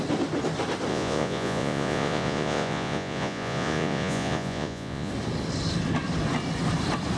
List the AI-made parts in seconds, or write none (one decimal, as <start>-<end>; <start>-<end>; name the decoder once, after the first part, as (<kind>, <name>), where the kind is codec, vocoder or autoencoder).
0.9-5.1 (vocoder, Vocos)